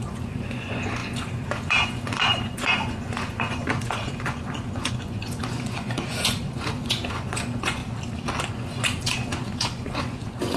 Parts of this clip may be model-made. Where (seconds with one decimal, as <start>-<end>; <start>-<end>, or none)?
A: 0.0-7.8; 8.5-10.6